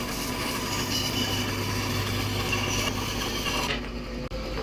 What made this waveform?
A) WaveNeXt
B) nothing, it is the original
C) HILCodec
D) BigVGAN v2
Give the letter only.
B